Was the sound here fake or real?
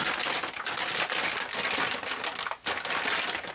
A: real